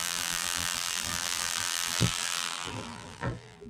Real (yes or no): no